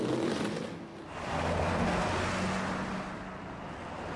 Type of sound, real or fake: real